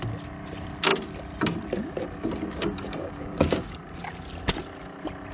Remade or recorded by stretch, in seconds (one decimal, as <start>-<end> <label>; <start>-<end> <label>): 0.0-2.6 recorded; 2.6-3.8 remade; 3.8-5.3 recorded

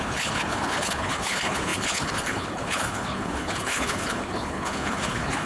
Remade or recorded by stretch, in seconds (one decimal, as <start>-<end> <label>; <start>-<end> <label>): 0.0-5.5 remade

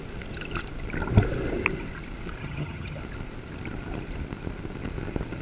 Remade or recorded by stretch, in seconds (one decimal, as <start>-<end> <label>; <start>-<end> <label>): 0.0-2.4 recorded; 2.4-3.0 remade; 3.0-5.4 recorded

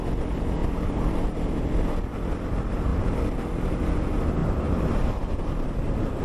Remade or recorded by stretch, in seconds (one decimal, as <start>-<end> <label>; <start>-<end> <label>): 0.0-0.6 recorded; 0.6-1.8 remade; 1.8-4.4 recorded; 4.4-6.2 remade